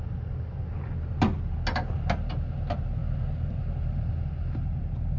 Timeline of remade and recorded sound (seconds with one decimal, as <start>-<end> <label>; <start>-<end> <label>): 0.0-5.2 recorded